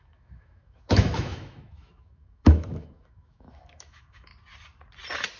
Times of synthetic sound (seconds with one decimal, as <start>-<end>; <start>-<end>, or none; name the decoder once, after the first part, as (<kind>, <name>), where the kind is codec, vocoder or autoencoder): 0.0-4.3 (autoencoder, DAC-VAE)